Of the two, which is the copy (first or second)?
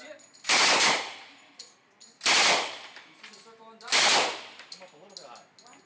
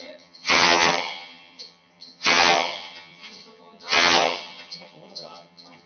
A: second